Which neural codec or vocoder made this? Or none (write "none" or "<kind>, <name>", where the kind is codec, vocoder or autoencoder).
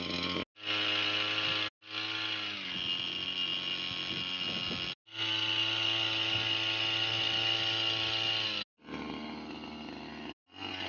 none